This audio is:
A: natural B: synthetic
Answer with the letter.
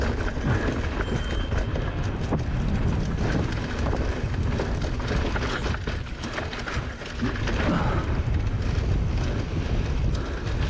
A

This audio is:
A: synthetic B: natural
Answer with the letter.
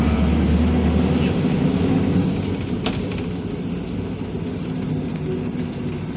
B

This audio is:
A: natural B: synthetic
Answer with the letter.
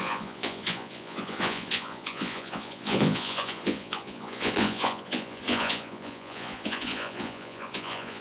B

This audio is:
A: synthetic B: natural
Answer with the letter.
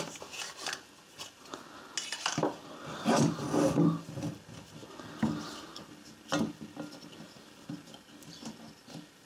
B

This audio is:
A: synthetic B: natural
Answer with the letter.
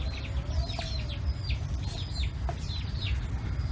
B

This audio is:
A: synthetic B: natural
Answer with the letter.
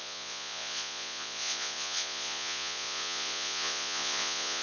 A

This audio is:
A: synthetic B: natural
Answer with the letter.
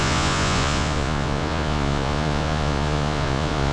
A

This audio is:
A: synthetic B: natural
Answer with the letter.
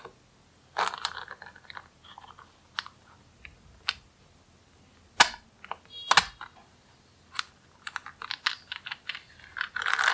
B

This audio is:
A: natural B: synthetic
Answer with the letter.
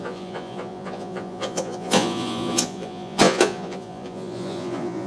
B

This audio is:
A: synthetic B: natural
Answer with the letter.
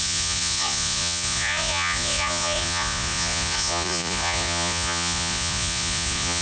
A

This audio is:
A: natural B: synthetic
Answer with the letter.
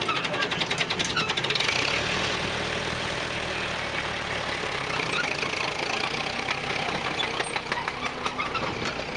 A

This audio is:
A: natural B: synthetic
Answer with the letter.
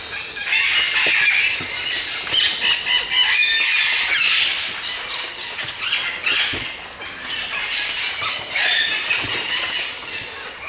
A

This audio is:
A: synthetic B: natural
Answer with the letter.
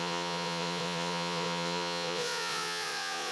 A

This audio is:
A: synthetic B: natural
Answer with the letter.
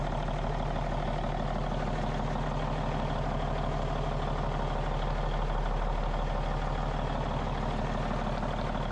B